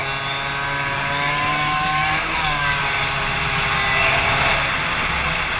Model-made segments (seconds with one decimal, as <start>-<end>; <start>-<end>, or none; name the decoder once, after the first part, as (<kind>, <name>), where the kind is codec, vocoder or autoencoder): 0.9-2.8 (codec, DAC)